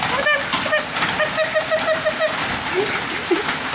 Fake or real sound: real